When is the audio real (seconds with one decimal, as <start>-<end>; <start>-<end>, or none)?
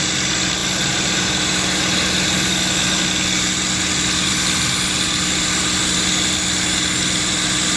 0.0-7.8